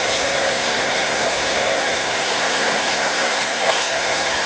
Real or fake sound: fake